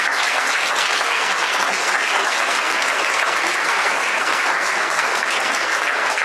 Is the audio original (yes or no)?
no